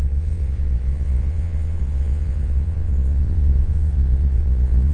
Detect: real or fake fake